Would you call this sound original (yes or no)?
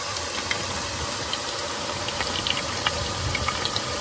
yes